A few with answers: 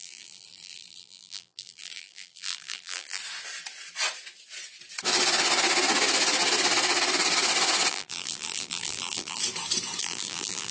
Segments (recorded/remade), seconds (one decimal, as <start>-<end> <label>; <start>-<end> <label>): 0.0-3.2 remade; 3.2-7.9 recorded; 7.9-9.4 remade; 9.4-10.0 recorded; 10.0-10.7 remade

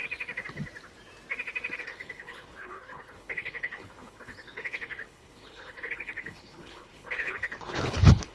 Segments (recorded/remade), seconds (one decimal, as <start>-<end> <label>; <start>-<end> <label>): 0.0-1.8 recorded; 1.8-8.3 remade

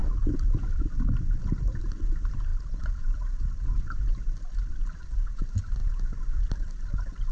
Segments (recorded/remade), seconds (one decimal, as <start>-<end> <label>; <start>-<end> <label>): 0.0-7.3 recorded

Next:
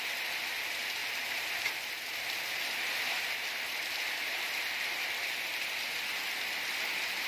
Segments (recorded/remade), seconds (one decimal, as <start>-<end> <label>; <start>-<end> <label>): 0.0-7.3 recorded